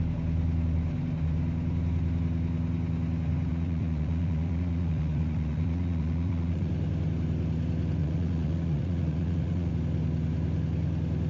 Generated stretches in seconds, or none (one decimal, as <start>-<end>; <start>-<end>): 3.5-6.7; 8.0-9.7